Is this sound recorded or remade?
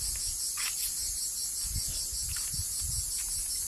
recorded